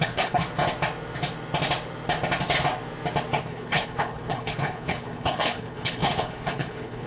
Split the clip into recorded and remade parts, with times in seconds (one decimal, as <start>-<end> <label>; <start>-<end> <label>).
0.0-0.4 remade; 0.4-3.4 recorded; 3.4-7.1 remade